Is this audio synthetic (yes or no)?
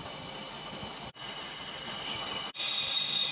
no